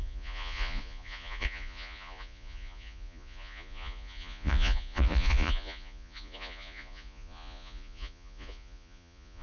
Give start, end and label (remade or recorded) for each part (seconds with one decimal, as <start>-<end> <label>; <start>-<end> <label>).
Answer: 0.0-9.4 remade